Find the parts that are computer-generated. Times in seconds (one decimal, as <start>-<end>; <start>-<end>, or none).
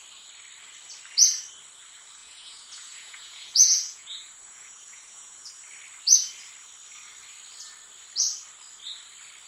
2.2-5.5